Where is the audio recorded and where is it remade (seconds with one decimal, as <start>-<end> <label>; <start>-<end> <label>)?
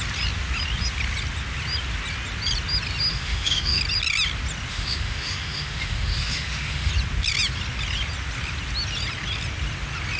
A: 0.0-3.1 recorded; 3.1-3.8 remade; 3.8-4.7 recorded; 4.7-6.9 remade; 6.9-10.2 recorded